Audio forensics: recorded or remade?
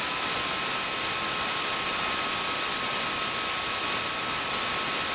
recorded